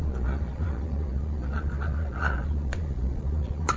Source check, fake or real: fake